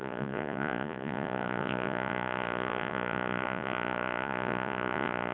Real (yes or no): no